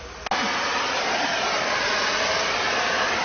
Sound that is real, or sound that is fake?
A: real